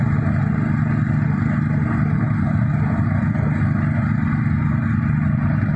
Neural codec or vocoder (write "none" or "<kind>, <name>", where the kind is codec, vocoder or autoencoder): none